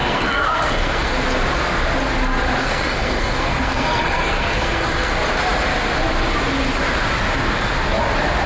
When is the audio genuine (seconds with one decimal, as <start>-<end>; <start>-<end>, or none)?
1.1-2.6; 5.1-8.5